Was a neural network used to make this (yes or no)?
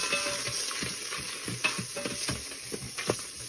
no